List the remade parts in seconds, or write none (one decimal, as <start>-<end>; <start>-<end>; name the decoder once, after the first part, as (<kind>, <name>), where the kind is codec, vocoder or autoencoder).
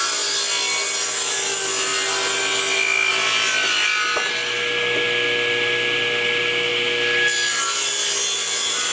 none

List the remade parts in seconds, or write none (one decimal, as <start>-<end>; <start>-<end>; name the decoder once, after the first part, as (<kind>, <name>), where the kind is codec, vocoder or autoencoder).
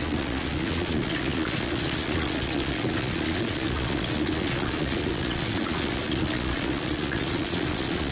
0.0-8.1 (vocoder, Vocos)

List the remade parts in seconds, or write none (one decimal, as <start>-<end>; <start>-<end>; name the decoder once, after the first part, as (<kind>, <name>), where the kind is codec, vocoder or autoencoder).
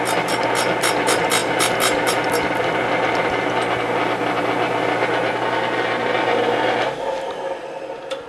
none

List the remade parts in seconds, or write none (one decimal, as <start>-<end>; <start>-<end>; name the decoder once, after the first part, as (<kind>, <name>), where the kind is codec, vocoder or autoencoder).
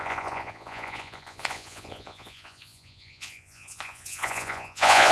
0.0-5.1 (vocoder, Vocos)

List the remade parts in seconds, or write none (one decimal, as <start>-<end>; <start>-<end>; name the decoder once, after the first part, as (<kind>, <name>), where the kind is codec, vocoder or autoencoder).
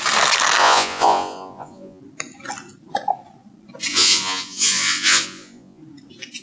0.6-2.0 (vocoder, Vocos); 3.9-5.8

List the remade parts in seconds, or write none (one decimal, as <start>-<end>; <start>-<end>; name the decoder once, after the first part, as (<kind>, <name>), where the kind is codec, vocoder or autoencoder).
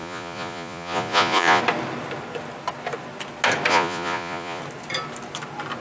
0.0-1.6 (vocoder, Vocos); 3.7-4.6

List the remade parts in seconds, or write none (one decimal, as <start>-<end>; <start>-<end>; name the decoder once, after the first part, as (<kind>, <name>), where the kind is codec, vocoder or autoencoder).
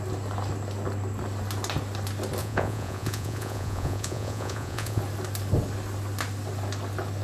2.4-5.0 (vocoder, Vocos)